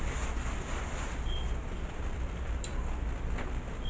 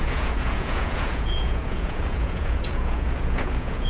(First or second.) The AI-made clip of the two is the second